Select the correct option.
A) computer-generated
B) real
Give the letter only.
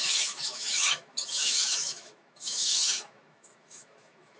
A